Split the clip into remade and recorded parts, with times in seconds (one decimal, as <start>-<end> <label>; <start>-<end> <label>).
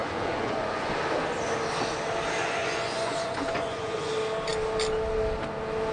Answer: 0.0-0.9 remade; 0.9-2.4 recorded; 2.4-4.1 remade; 4.1-5.9 recorded